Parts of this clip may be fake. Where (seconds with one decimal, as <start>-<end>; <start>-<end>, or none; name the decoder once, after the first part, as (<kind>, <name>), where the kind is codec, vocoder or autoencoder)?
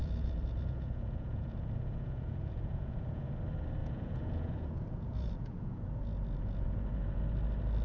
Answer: 0.0-3.4 (vocoder, Vocos); 3.8-7.2